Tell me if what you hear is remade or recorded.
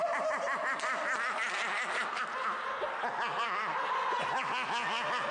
recorded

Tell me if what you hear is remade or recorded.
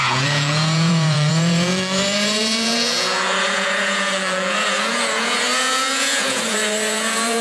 remade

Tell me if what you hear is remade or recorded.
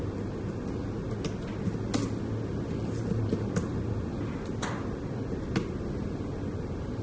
recorded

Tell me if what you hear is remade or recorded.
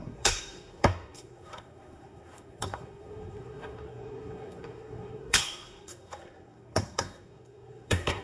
remade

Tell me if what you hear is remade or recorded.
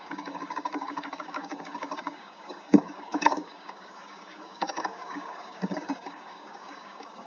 remade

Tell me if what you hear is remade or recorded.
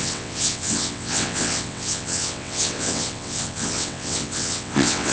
remade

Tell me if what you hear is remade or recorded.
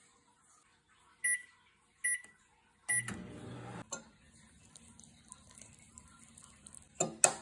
recorded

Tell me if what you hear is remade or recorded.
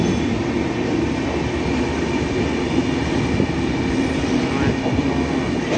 recorded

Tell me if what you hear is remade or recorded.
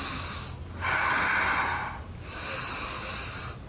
recorded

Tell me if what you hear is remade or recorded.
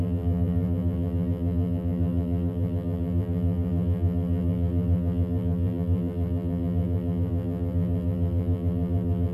remade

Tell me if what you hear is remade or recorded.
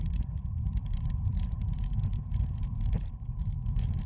remade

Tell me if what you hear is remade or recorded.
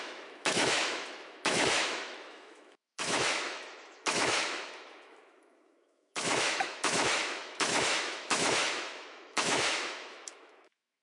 remade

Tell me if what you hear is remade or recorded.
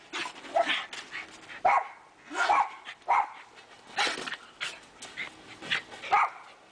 recorded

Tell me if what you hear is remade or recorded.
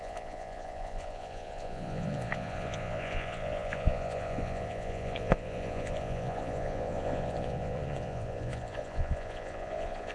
remade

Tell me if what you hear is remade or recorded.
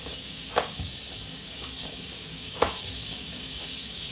remade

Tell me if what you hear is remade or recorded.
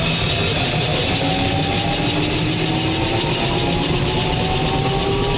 recorded